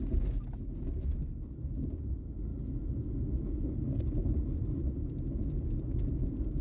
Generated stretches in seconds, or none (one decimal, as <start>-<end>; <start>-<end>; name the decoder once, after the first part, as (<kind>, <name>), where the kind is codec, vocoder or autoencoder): none